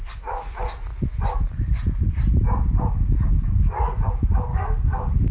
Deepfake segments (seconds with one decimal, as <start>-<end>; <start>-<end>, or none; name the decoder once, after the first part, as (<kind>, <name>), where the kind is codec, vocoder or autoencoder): 4.5-5.3 (codec, DAC)